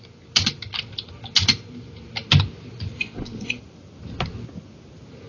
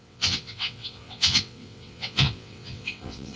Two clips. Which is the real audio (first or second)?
first